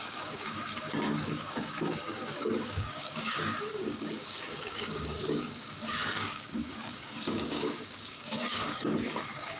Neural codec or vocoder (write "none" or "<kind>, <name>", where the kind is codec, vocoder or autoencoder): codec, DAC